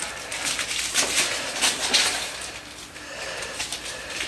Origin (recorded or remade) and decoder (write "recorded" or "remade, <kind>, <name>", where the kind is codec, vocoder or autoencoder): recorded